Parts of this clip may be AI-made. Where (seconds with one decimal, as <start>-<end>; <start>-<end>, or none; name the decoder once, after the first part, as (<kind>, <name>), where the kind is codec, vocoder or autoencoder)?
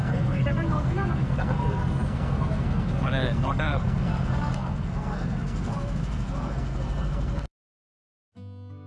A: 0.0-8.2 (codec, SNAC)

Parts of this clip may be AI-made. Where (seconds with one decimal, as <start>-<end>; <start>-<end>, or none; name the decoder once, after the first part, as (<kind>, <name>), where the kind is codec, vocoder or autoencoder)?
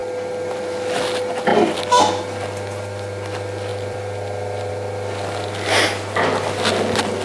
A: 0.0-0.6 (vocoder, BigVGAN v2); 1.5-2.0; 3.7-4.7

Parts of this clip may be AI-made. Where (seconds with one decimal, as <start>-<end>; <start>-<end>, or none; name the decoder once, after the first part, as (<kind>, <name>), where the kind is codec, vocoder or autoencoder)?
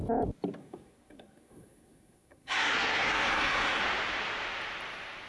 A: 0.6-3.8 (codec, SNAC)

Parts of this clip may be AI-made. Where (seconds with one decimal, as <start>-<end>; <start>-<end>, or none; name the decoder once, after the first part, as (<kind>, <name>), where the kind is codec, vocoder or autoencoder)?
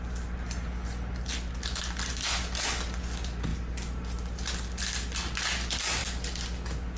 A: none